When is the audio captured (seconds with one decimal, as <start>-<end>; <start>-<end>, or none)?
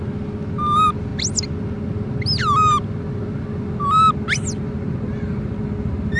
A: 0.0-6.2